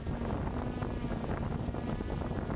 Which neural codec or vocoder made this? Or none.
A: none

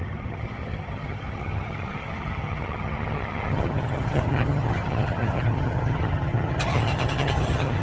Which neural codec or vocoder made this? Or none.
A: vocoder, HiFi-GAN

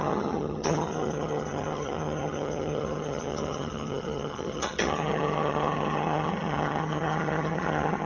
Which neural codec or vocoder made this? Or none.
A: vocoder, HiFi-GAN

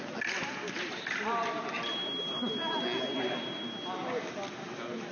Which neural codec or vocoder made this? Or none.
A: none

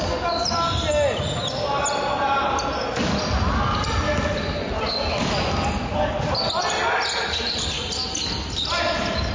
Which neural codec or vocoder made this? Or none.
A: none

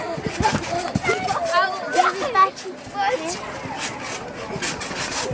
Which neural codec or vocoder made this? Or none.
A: none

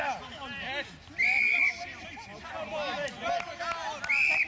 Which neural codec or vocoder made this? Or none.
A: none